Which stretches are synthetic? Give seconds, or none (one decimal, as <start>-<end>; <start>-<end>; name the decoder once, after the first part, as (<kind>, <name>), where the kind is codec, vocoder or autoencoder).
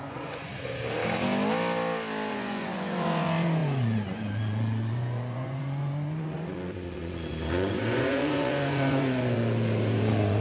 0.0-0.5 (vocoder, Vocos); 2.3-10.4